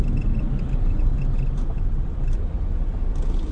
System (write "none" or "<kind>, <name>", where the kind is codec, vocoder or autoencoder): vocoder, BigVGAN v2